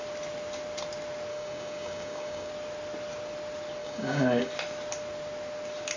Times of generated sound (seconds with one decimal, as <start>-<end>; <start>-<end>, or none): 1.3-2.5; 3.8-4.5